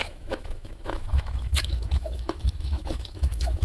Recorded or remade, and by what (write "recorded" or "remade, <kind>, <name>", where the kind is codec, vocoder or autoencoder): remade, autoencoder, DAC-VAE